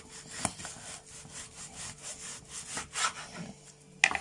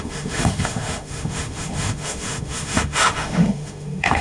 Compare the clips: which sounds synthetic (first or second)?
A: second